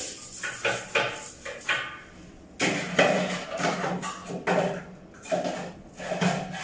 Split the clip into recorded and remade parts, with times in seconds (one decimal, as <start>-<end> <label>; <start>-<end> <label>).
0.0-6.6 recorded